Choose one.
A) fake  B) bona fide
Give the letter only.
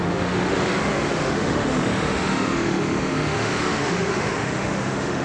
A